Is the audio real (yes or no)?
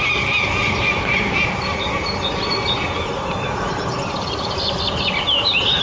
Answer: yes